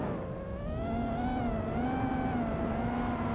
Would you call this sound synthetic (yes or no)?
no